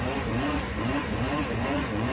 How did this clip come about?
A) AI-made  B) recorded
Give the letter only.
A